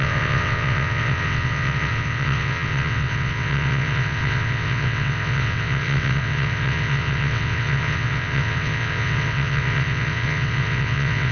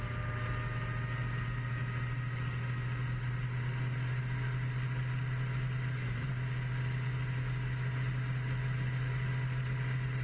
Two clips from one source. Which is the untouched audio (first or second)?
second